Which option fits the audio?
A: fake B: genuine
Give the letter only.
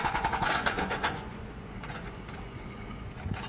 A